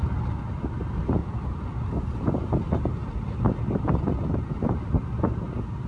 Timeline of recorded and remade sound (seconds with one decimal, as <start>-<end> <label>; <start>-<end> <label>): 0.0-5.9 recorded